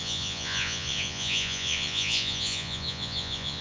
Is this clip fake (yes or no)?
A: yes